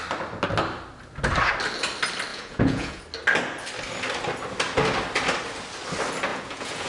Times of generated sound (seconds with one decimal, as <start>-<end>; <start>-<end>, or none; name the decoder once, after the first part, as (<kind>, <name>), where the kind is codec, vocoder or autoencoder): 2.3-3.0 (vocoder, Vocos); 6.3-6.9